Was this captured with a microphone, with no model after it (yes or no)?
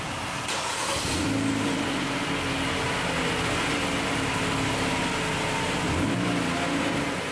yes